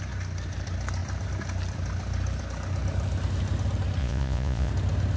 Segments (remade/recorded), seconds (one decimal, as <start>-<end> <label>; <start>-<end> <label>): 0.0-4.0 recorded; 4.0-4.7 remade; 4.7-5.2 recorded